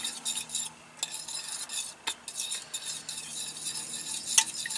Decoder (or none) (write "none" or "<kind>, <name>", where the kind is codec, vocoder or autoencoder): none